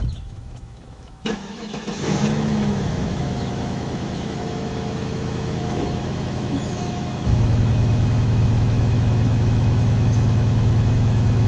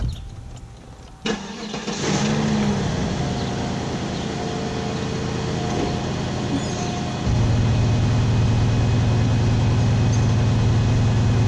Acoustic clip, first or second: second